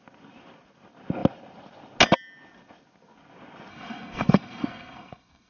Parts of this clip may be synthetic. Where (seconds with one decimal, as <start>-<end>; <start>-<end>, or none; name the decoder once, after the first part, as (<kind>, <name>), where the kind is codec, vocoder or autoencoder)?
3.7-5.5 (codec, SNAC)